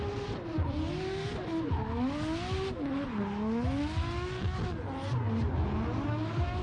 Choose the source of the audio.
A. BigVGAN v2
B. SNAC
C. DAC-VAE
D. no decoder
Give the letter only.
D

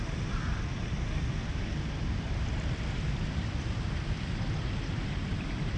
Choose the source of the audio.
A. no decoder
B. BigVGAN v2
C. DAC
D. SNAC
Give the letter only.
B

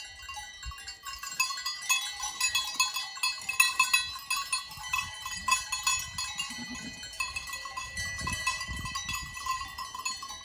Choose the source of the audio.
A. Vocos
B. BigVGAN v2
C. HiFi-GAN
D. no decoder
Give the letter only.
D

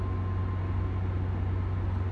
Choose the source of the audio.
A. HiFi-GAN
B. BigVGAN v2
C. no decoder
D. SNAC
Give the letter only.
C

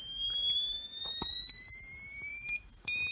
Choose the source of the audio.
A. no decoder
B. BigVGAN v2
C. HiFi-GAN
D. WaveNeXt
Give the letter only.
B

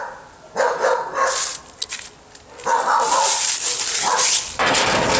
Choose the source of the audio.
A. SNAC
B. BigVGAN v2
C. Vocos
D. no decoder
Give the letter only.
D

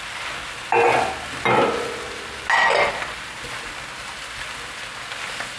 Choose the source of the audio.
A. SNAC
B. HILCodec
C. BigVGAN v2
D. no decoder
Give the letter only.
D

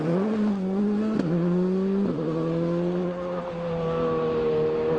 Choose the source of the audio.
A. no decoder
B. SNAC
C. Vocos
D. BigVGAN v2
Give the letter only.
A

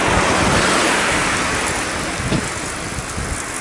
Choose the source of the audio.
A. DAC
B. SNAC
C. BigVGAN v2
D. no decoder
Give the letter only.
D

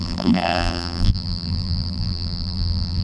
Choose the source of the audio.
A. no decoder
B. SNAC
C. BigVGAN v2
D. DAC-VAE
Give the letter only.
C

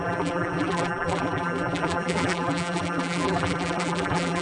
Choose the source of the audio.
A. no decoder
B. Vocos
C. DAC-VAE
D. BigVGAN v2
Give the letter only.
D